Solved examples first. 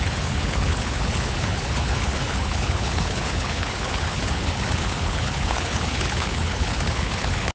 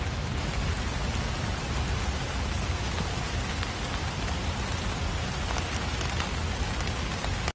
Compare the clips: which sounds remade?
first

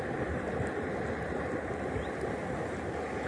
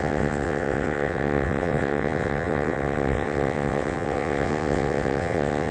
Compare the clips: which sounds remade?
second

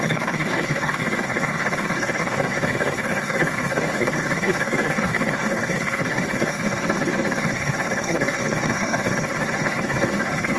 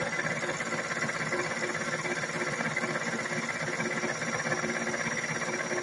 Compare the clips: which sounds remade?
first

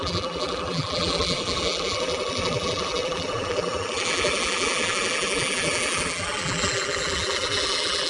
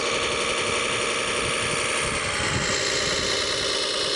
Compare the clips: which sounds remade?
first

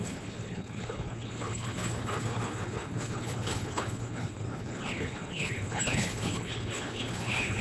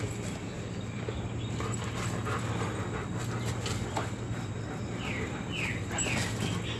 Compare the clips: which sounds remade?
first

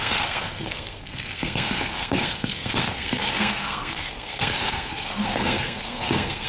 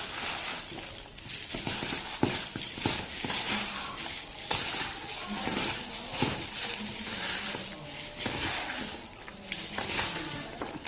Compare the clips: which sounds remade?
first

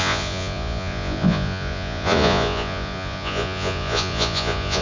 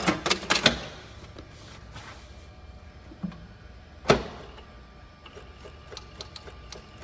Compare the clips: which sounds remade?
first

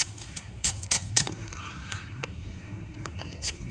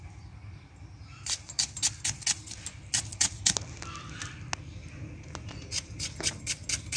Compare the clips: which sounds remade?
first